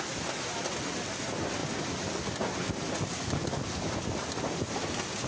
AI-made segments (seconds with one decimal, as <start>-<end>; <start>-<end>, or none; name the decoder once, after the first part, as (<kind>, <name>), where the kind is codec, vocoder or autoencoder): none